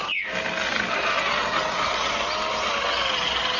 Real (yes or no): yes